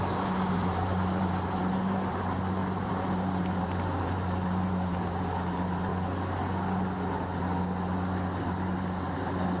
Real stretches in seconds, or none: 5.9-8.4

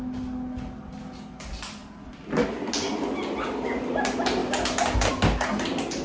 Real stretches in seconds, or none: 0.0-6.0

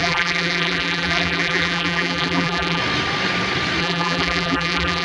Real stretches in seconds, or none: 2.8-3.8